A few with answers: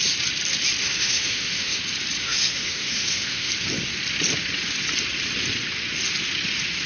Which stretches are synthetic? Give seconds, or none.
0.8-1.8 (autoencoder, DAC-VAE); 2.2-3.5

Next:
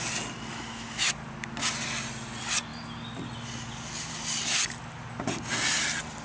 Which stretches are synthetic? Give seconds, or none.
0.5-1.1 (autoencoder, DAC-VAE)

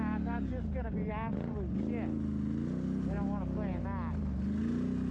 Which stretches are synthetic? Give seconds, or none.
none

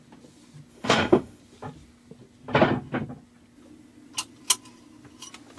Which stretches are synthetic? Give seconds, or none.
0.7-1.4 (autoencoder, DAC-VAE)

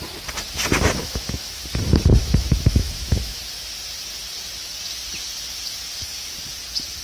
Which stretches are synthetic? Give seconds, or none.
1.0-1.6 (autoencoder, DAC-VAE); 2.2-3.4

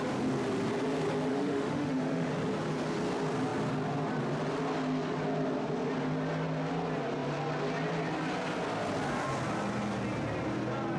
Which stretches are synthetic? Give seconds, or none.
1.3-2.3 (autoencoder, DAC-VAE)

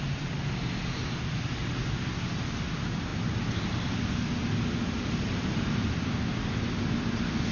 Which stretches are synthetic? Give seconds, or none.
none